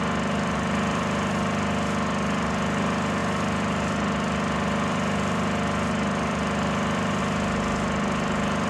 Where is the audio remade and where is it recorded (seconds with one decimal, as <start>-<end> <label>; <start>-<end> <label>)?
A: 0.0-8.7 recorded